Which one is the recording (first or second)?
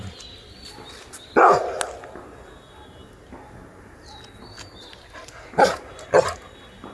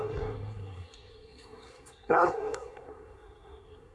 first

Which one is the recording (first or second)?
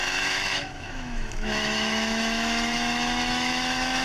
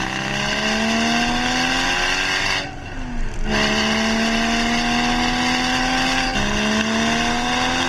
second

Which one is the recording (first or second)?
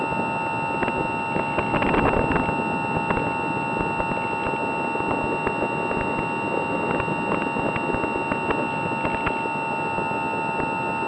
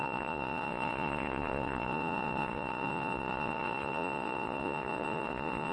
first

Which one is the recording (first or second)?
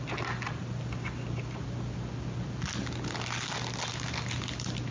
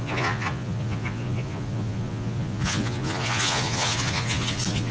first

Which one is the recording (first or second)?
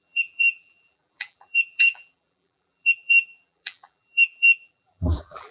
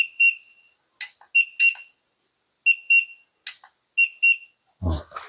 second